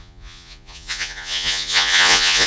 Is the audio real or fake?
fake